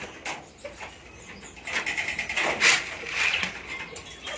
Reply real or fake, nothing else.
real